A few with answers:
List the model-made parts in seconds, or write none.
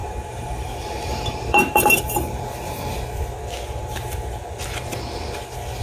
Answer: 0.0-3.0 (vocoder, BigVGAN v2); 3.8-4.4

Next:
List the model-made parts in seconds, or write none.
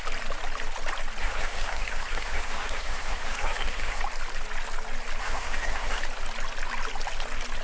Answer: 1.2-4.0 (codec, SNAC); 5.2-6.0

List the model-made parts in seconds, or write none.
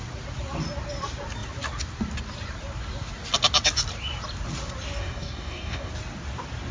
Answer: 5.0-5.9 (codec, DAC)